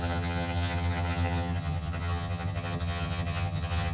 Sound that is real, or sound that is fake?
fake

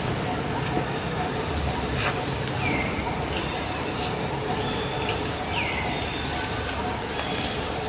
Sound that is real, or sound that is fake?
real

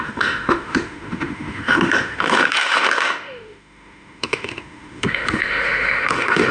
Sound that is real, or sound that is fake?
fake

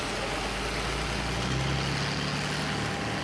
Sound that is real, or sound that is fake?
real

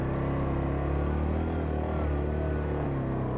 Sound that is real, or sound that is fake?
real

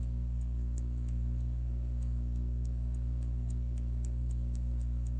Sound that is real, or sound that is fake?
fake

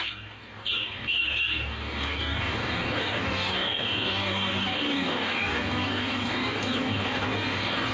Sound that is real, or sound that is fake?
fake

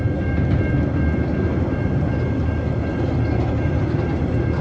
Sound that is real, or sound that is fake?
real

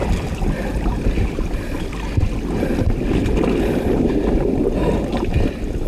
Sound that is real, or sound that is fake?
real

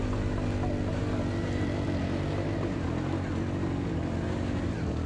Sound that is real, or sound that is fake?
real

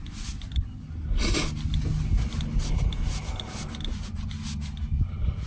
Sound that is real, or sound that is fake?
real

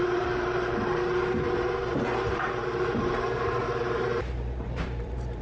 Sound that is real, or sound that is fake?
fake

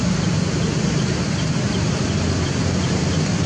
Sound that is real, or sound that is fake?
real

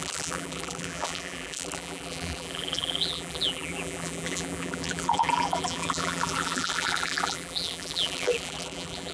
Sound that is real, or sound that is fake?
fake